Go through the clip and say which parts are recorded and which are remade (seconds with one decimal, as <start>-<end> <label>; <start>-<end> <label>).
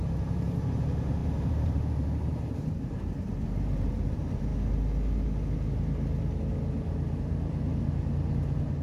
0.0-4.5 remade; 4.5-8.8 recorded